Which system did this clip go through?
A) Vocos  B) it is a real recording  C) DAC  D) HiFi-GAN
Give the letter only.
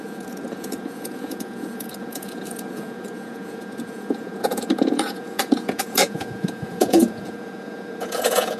A